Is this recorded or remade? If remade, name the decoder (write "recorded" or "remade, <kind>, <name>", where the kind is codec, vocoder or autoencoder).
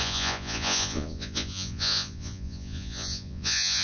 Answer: remade, vocoder, Vocos